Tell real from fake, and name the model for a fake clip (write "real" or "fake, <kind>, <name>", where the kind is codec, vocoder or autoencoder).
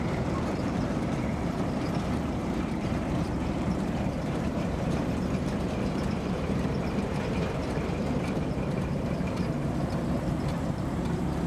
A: fake, vocoder, BigVGAN v2